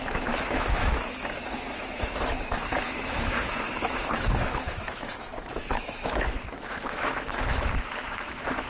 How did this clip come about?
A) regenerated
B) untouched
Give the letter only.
A